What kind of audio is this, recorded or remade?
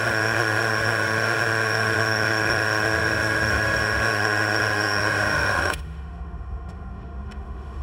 remade